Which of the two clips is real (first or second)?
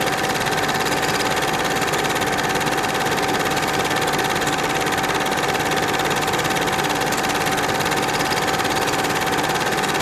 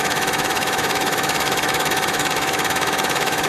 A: first